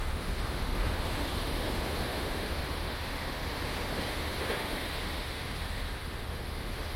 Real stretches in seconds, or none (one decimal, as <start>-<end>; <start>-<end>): none